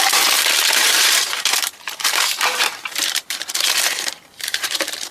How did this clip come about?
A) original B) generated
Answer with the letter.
B